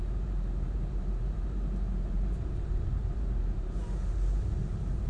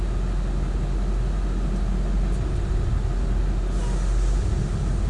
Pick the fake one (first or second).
first